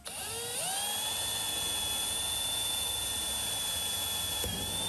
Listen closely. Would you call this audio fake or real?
real